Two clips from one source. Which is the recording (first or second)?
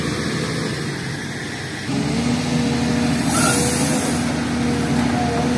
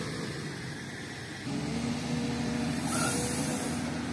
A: first